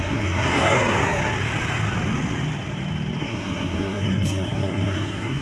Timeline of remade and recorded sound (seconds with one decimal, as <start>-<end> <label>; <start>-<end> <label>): 0.0-1.2 remade; 1.2-3.2 recorded; 3.2-5.4 remade